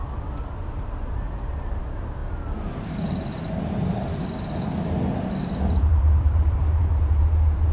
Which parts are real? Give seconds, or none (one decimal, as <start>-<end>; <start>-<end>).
0.0-0.7; 2.2-5.6